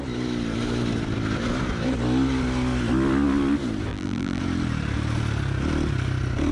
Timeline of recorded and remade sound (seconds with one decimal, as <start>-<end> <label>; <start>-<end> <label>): 0.0-3.9 recorded; 3.9-4.4 remade; 4.4-6.5 recorded